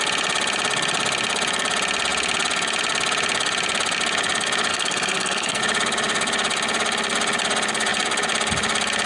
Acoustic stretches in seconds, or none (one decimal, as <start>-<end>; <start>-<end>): 0.0-4.7; 5.6-9.1